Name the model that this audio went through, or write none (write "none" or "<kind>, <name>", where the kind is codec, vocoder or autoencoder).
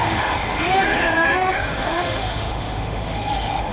autoencoder, DAC-VAE